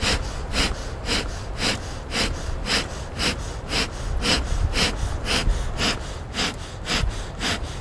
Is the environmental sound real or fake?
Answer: real